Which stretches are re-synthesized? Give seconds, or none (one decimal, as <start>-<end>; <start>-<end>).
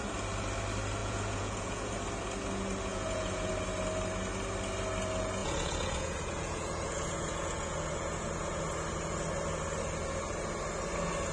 1.0-1.9; 2.9-3.5; 5.4-8.6